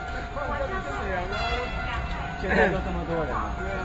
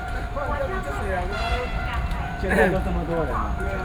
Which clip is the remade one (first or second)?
second